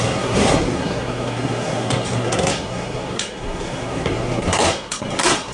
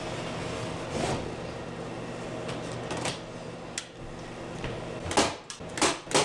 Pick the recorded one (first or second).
second